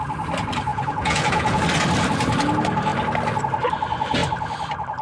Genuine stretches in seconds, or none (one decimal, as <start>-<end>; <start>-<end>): 0.0-0.7; 1.6-5.0